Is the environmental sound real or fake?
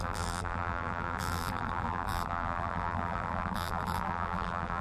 fake